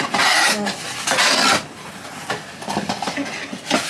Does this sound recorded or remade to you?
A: recorded